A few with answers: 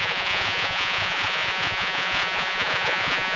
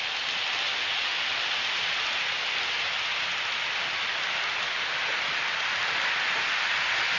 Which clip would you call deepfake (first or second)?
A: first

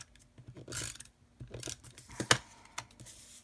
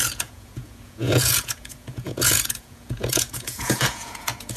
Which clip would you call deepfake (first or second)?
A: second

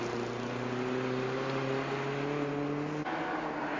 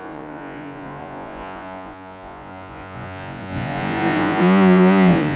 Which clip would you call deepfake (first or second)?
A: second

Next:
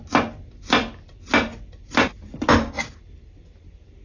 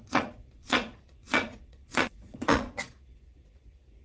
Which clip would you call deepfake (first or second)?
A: second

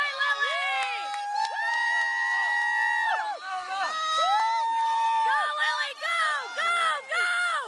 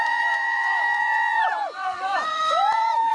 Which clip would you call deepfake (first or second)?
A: second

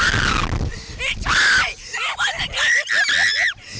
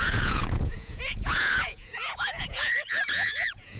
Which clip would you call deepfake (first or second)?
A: second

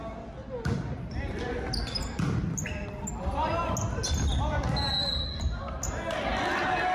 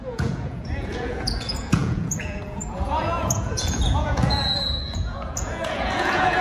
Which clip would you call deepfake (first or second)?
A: second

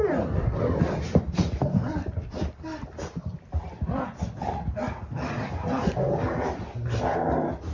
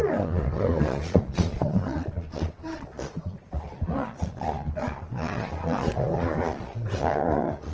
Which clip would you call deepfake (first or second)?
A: second